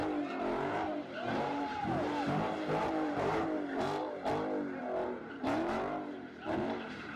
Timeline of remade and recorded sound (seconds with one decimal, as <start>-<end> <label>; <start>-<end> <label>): 0.0-4.3 remade; 4.3-4.8 recorded; 4.8-7.2 remade